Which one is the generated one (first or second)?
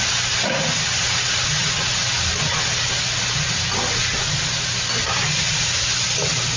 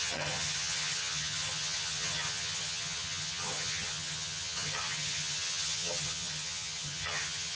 second